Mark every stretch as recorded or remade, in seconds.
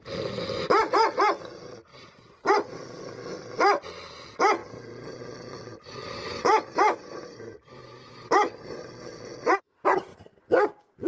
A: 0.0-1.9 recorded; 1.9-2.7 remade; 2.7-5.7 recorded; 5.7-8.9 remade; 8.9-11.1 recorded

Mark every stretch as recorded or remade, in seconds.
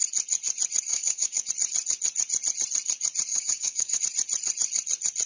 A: 0.0-0.9 recorded; 0.9-1.5 remade; 1.5-3.3 recorded; 3.3-4.0 remade; 4.0-5.3 recorded